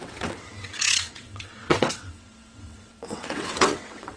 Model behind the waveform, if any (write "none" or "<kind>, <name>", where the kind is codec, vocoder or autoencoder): vocoder, WaveNeXt